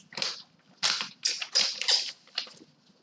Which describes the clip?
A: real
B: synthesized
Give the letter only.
A